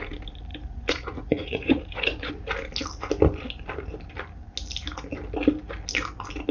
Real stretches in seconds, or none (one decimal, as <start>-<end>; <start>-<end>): 0.0-0.5; 2.3-6.5